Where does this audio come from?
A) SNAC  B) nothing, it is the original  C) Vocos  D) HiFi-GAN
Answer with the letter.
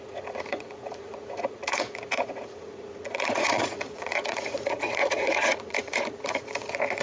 C